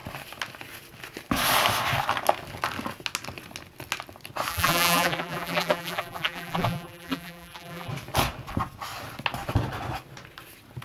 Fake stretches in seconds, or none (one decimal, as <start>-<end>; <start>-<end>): 4.5-7.9